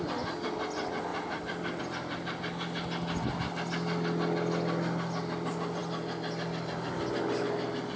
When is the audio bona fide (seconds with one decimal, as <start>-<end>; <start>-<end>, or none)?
0.0-8.0